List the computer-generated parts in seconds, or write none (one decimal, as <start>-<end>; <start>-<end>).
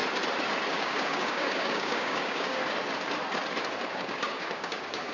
0.7-2.6; 3.9-5.1